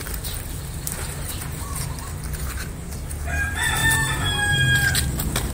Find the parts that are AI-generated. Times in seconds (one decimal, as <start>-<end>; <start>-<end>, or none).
none

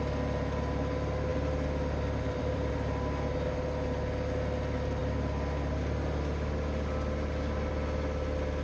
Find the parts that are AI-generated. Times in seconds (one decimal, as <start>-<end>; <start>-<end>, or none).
1.3-2.7

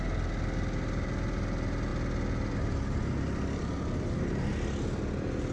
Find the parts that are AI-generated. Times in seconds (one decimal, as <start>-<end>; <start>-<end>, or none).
none

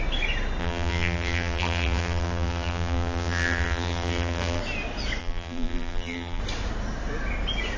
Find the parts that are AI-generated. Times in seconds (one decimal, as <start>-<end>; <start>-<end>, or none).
0.6-4.6; 5.2-6.4

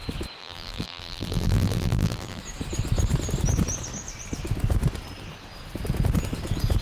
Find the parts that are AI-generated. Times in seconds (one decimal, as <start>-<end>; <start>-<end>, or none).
0.4-2.4

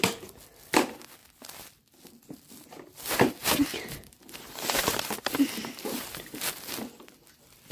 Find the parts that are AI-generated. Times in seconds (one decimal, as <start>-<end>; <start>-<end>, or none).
3.7-6.4

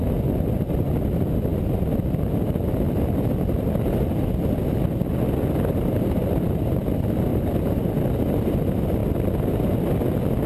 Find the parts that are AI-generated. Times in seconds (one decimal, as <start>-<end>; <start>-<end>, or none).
7.3-7.9

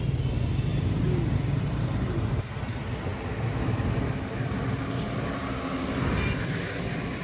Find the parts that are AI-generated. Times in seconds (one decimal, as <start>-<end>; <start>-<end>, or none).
0.7-2.4